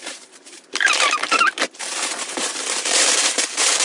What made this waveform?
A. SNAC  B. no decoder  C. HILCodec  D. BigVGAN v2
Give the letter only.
D